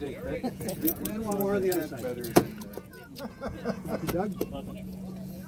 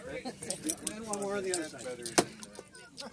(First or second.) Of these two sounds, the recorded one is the second